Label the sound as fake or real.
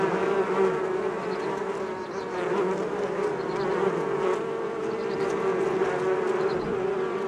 real